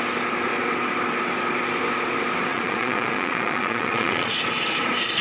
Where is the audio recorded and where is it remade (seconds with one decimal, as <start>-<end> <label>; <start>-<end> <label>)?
0.0-2.5 recorded; 2.5-4.3 remade; 4.3-5.2 recorded